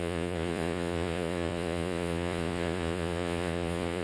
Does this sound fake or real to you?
fake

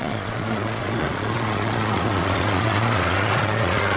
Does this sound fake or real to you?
fake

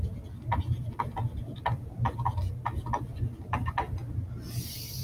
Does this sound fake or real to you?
real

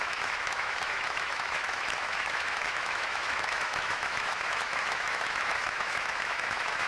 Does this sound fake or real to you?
fake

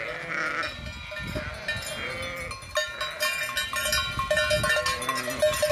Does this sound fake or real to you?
real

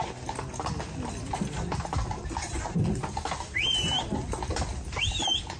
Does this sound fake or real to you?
real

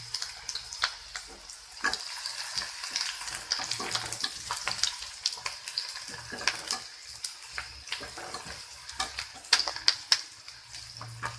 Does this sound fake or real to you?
real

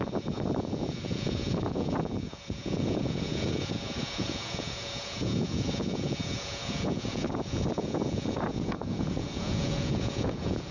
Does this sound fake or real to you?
fake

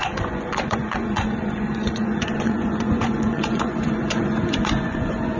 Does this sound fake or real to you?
fake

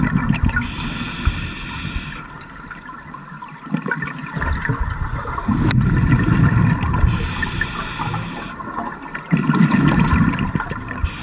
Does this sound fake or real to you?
real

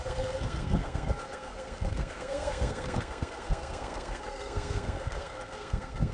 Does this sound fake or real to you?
fake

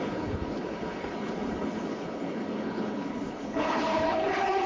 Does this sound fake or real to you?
fake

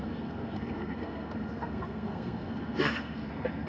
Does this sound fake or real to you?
fake